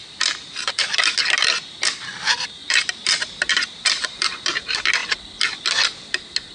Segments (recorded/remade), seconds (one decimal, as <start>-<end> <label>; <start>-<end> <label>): 0.0-0.8 remade; 0.8-2.6 recorded; 2.6-4.6 remade; 4.6-6.5 recorded